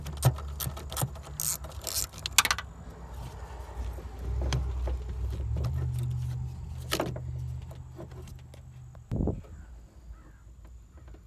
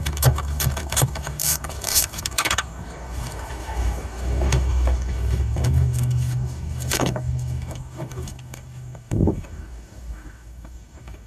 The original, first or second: first